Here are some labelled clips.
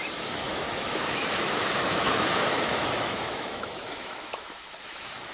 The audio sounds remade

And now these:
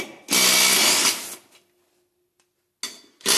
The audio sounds recorded